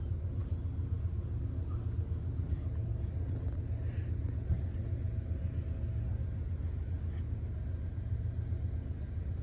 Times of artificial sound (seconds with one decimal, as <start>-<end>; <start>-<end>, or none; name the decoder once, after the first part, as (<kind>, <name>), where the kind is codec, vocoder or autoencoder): none